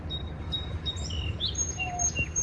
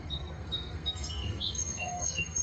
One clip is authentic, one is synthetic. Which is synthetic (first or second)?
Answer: second